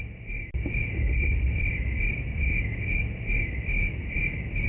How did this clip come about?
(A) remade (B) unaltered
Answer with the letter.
B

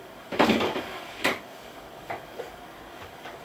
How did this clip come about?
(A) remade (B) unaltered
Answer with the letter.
A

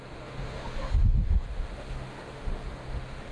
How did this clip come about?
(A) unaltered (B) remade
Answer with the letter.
B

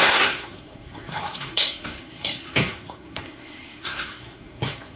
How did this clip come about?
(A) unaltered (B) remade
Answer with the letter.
B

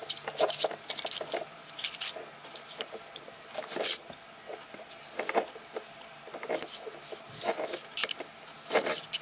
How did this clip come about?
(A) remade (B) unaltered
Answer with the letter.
B